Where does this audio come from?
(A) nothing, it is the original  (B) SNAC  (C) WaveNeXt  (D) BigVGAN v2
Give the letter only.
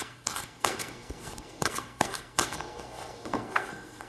B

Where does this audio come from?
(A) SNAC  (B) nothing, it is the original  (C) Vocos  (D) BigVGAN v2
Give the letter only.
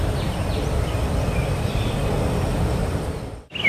B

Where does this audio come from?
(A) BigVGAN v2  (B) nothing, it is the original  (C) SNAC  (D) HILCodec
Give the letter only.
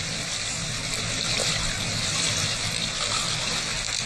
B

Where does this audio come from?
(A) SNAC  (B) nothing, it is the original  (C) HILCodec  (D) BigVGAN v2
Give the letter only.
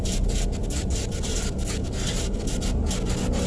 B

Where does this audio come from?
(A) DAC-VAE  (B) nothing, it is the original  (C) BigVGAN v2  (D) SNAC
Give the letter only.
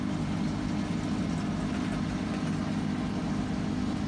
B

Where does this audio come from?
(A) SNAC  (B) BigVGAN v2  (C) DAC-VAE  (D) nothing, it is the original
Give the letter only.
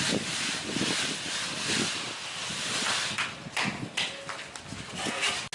D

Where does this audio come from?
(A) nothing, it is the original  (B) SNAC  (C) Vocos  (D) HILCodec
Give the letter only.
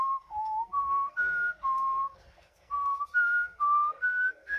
B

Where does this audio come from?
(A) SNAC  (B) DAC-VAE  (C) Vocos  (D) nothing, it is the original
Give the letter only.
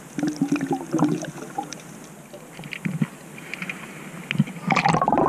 D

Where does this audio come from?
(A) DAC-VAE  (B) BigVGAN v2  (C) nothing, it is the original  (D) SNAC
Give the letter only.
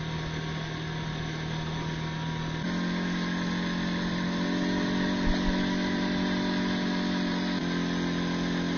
C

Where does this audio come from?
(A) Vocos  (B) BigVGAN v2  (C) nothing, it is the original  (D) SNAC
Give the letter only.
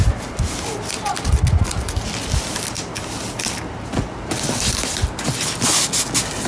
C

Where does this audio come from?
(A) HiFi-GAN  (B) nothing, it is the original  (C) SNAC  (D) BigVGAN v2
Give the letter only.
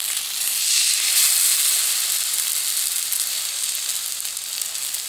B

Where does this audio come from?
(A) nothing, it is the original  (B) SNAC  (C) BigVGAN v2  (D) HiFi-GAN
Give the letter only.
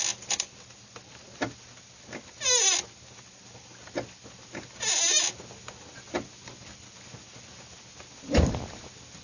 A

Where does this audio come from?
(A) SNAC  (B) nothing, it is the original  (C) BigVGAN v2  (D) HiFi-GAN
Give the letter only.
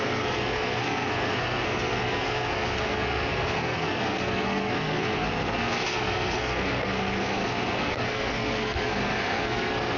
A